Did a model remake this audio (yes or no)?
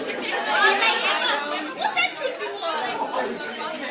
no